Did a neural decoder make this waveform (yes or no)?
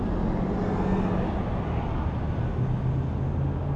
no